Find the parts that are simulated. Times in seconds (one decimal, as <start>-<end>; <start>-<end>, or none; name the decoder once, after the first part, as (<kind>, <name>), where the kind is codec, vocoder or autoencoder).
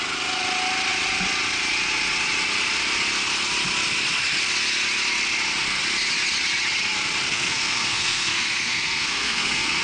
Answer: 7.3-9.8 (codec, SNAC)